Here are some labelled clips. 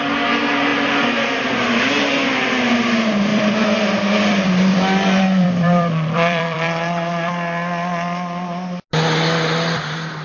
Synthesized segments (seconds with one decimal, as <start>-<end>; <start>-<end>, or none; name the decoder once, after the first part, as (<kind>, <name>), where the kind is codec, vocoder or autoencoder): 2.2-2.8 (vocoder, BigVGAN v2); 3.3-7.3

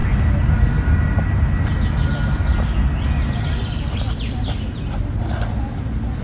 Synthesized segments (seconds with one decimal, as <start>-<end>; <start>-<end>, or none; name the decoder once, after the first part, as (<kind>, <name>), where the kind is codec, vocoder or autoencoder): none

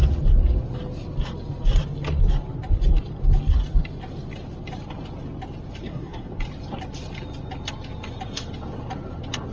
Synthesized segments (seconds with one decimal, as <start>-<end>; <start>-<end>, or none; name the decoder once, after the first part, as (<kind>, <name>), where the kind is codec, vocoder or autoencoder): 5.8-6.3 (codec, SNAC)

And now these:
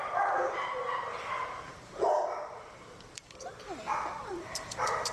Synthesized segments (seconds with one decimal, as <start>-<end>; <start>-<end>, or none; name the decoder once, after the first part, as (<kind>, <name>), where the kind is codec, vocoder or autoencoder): 0.0-3.2 (vocoder, BigVGAN v2); 4.3-5.1

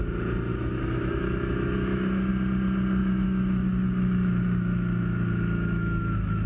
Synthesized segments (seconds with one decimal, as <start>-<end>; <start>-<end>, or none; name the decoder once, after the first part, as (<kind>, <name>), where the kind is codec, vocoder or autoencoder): 0.5-2.3 (autoencoder, DAC-VAE); 3.0-6.5

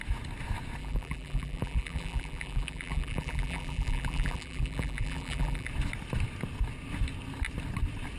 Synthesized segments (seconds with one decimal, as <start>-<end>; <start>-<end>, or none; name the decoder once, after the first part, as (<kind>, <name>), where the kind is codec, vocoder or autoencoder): 0.8-5.7 (vocoder, BigVGAN v2)

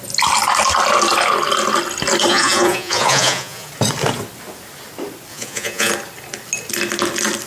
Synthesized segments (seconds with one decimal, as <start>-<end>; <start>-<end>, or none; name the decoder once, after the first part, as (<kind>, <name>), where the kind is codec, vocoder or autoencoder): 2.3-3.7 (vocoder, Vocos); 5.3-5.9

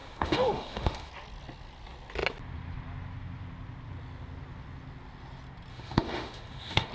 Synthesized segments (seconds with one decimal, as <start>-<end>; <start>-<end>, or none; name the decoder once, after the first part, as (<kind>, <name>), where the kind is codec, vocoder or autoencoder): 0.0-1.1 (autoencoder, DAC-VAE); 5.7-6.9